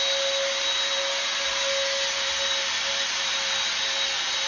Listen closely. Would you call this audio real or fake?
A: real